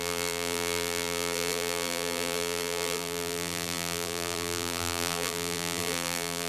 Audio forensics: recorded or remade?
remade